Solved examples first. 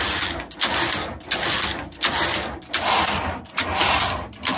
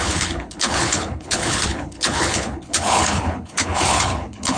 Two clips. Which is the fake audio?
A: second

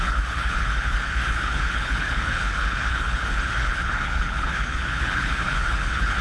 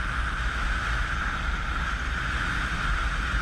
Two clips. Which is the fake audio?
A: first